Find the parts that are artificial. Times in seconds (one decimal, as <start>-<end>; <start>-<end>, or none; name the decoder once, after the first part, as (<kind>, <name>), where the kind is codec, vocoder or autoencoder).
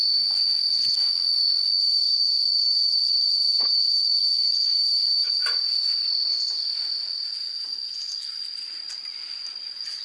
1.8-5.4 (codec, HILCodec)